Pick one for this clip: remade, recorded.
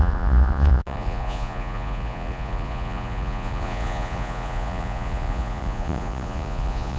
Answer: remade